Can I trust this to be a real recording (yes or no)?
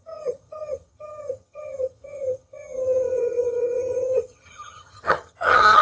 no